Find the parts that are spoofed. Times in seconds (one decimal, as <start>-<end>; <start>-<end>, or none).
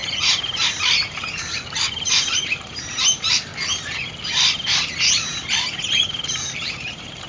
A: 0.0-3.5; 5.1-7.3